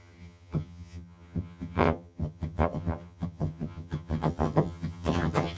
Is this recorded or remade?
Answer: remade